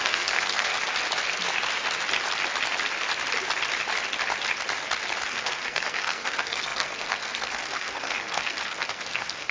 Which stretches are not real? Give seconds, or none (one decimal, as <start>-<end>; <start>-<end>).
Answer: 0.0-0.7; 5.3-9.5